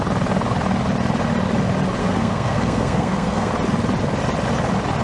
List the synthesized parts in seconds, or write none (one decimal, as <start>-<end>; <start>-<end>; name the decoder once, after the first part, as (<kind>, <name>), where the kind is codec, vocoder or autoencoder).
2.0-3.5 (codec, SNAC)